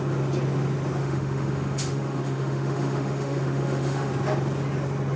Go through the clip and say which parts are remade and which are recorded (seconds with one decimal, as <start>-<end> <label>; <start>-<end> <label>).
0.0-1.0 recorded; 1.0-4.1 remade; 4.1-5.2 recorded